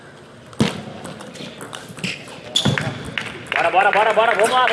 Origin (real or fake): real